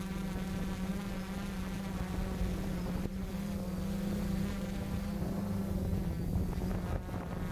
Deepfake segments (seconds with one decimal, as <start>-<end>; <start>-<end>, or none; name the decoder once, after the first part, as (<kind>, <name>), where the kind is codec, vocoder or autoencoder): 3.3-5.2 (vocoder, BigVGAN v2)